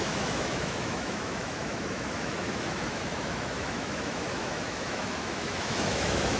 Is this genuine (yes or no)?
no